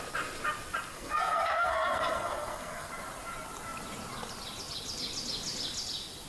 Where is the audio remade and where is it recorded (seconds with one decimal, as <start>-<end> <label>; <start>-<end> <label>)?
0.0-0.9 recorded; 0.9-2.9 remade; 2.9-6.3 recorded